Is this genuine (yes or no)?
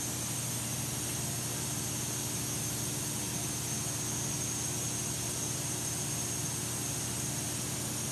yes